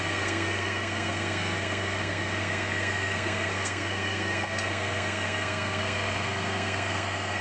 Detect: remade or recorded remade